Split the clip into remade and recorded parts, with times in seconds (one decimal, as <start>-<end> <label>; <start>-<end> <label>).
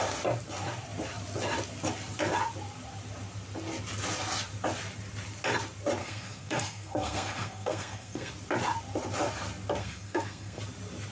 0.0-6.0 recorded; 6.0-8.3 remade; 8.3-9.8 recorded; 9.8-10.6 remade; 10.6-11.1 recorded